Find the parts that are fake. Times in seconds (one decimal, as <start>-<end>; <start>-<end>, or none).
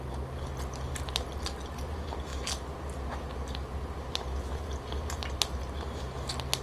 none